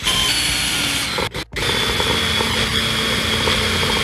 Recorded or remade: recorded